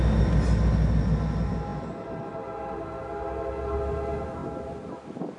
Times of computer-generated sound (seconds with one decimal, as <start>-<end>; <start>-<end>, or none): none